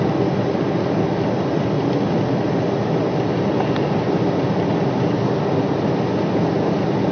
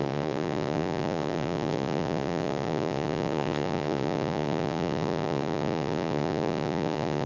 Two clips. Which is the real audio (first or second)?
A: first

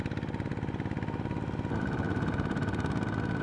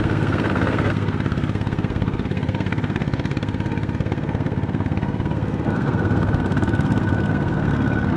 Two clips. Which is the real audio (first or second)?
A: first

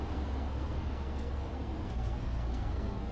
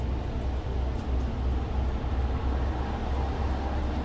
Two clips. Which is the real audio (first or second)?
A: second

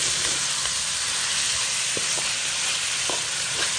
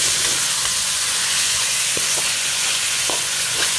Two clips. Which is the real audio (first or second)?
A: first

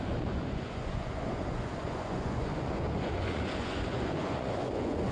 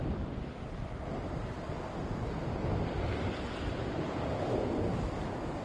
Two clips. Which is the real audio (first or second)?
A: second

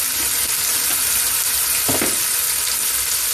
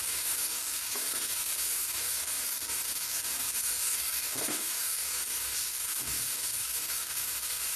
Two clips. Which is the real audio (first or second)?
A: first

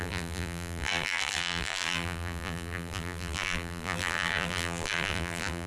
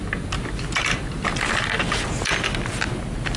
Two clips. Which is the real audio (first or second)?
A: second